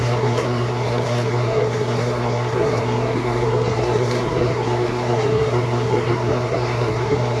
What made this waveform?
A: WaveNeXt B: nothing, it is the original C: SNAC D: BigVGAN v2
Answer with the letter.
C